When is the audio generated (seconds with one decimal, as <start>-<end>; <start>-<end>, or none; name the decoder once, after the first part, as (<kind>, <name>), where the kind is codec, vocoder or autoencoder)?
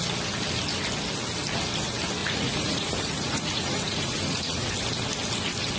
2.2-4.7 (vocoder, Vocos)